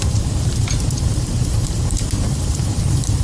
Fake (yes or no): yes